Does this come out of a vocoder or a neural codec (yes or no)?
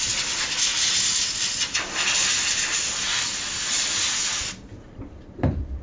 yes